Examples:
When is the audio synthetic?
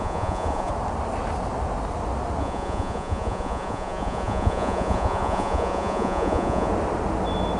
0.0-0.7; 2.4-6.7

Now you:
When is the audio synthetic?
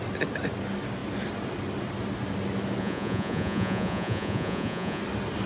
2.8-5.0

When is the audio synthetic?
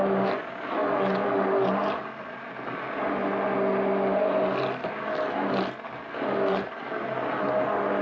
none